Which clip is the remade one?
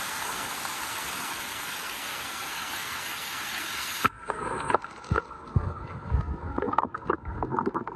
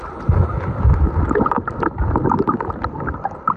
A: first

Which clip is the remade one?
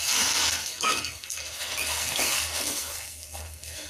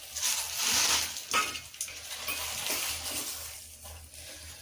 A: first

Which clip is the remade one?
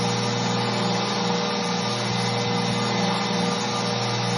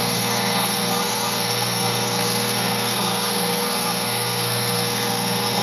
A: second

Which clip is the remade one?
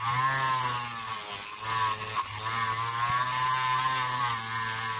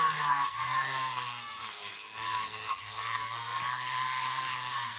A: second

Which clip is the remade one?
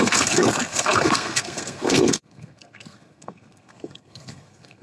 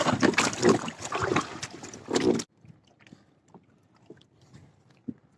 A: first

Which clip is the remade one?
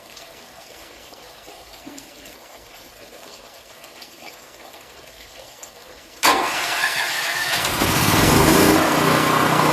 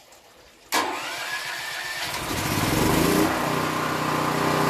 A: first